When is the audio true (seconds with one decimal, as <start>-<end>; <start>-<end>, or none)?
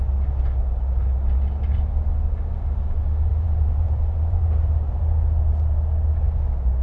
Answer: 0.0-3.3; 5.0-6.8